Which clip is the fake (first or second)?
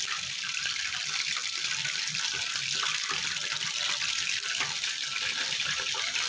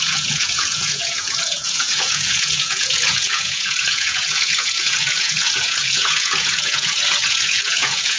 second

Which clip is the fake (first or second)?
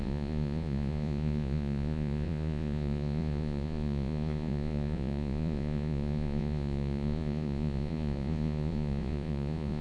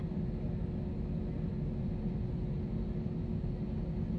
first